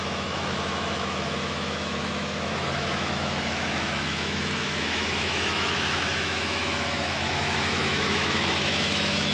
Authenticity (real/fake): fake